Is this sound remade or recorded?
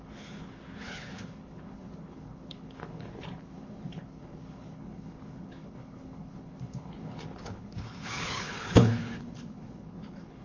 remade